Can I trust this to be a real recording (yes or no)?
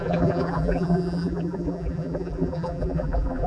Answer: no